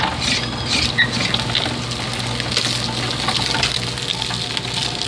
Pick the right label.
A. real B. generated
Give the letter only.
A